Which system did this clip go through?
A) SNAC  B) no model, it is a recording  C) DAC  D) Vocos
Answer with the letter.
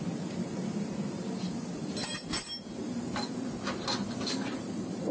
B